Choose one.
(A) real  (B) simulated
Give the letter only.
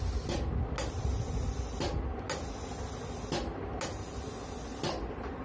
A